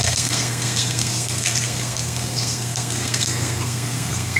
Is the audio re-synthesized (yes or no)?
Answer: yes